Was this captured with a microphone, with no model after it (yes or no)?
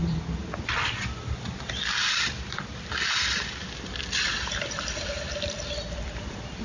no